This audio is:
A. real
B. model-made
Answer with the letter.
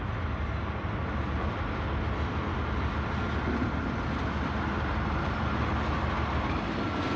A